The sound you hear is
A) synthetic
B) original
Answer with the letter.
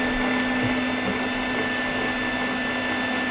B